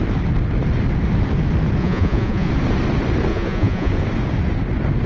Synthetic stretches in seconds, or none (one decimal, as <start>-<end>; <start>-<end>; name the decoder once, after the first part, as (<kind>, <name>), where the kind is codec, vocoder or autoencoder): 1.8-2.5 (vocoder, Vocos); 3.3-3.9